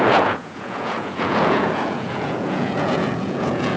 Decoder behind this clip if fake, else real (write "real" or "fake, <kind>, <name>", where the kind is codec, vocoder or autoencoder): fake, vocoder, Vocos